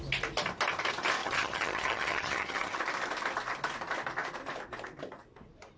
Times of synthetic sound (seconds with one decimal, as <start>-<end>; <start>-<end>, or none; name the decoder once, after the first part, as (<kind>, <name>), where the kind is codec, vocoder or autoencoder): 1.2-2.8 (vocoder, HiFi-GAN)